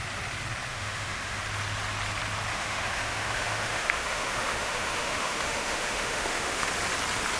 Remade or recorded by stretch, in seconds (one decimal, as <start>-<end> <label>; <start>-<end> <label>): 0.0-0.7 recorded; 0.7-1.4 remade; 1.4-2.5 recorded; 2.5-6.7 remade; 6.7-7.4 recorded